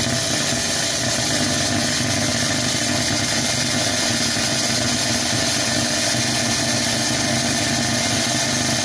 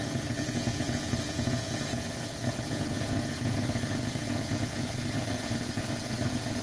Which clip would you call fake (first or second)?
second